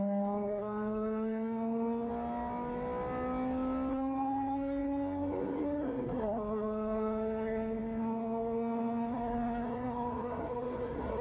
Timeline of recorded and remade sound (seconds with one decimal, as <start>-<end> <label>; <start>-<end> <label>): 0.0-2.1 remade; 2.1-3.9 recorded; 3.9-11.2 remade